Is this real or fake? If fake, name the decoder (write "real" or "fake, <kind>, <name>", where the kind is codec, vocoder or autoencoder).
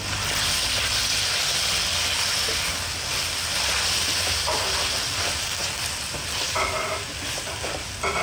real